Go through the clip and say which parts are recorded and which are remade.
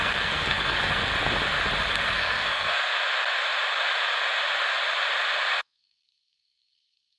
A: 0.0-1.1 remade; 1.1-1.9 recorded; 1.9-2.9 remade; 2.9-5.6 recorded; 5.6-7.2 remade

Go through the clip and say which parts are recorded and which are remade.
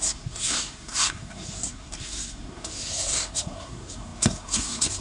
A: 0.0-5.0 remade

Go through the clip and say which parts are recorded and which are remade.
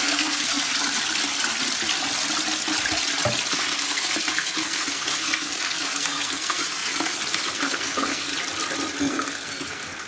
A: 0.0-0.7 remade; 0.7-3.5 recorded; 3.5-8.3 remade; 8.3-9.0 recorded; 9.0-10.1 remade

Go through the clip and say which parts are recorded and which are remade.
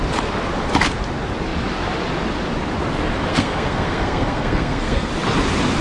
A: 0.0-3.3 recorded; 3.3-5.1 remade; 5.1-5.8 recorded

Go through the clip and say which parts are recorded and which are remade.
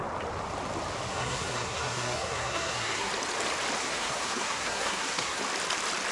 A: 0.0-1.1 recorded; 1.1-3.1 remade; 3.1-3.8 recorded; 3.8-5.4 remade; 5.4-6.1 recorded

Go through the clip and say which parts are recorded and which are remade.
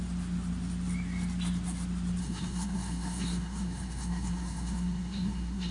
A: 0.0-2.2 recorded; 2.2-5.7 remade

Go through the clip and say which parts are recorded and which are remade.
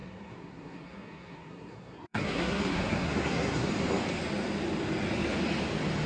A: 0.0-3.7 remade; 3.7-6.1 recorded